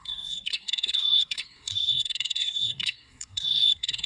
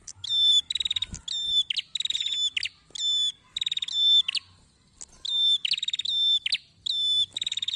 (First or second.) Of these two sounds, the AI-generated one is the first